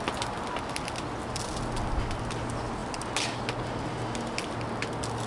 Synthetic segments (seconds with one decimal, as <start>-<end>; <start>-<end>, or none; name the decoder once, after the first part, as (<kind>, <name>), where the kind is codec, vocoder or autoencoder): none